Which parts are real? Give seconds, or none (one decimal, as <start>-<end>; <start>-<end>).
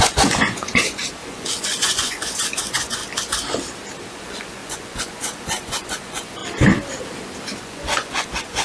3.0-4.1; 6.4-7.6